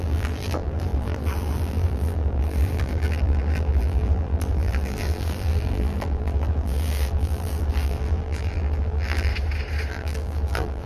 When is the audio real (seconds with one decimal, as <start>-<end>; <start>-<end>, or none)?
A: 9.3-9.9